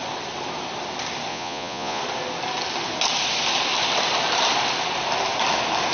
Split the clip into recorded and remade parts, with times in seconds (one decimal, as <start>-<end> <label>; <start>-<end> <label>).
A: 0.0-1.3 recorded; 1.3-2.0 remade; 2.0-5.9 recorded